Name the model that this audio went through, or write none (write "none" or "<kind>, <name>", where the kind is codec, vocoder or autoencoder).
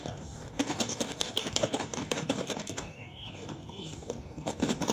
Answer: codec, DAC